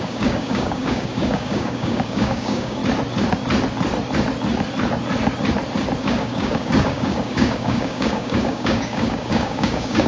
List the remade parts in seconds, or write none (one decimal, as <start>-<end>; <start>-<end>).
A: 0.0-2.8; 6.0-10.1